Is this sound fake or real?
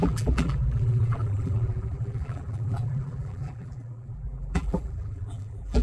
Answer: fake